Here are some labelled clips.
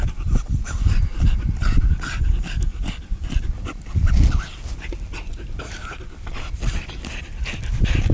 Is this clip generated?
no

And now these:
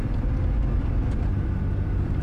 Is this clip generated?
no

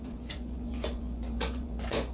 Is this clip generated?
yes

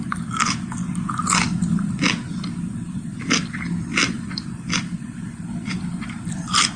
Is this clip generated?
no